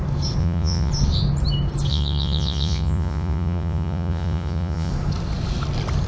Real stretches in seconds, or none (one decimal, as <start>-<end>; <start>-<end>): 0.0-0.4; 0.9-1.9; 4.9-6.1